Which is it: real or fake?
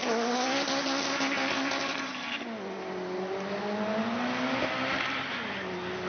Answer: real